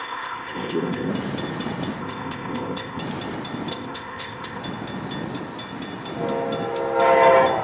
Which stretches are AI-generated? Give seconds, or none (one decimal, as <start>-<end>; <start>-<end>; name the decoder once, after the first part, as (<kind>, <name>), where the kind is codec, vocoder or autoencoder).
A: 0.0-1.1 (codec, ZipCodec); 2.0-3.0; 3.7-4.6